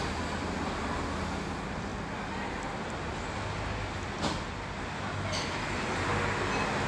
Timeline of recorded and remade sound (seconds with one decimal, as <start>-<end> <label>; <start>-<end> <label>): 0.0-6.9 recorded